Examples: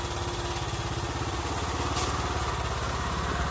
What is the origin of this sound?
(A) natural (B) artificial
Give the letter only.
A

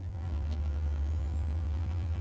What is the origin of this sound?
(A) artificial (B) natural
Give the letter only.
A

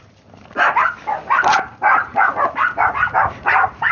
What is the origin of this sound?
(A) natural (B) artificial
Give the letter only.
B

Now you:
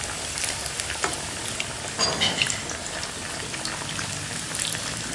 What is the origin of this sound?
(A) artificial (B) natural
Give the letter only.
B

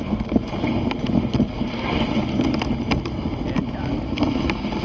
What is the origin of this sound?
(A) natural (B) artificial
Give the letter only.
A